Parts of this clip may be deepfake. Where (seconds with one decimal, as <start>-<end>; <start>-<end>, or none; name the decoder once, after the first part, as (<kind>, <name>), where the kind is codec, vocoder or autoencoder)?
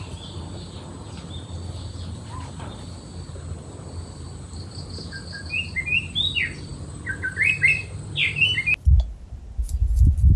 none